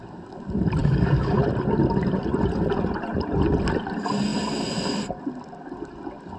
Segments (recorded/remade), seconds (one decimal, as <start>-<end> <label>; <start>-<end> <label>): 0.0-0.8 recorded; 0.8-1.4 remade; 1.4-6.4 recorded